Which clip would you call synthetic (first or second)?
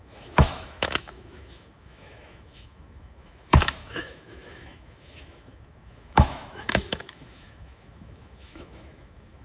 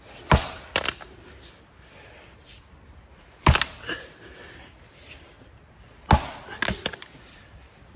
first